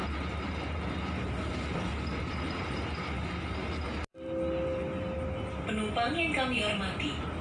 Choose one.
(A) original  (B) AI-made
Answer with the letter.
A